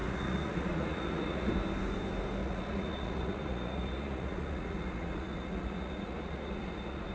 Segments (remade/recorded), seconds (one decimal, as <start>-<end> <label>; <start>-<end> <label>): 0.0-1.5 remade; 1.5-2.4 recorded; 2.4-7.1 remade